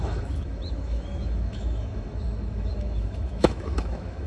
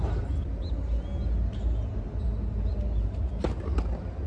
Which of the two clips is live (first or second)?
second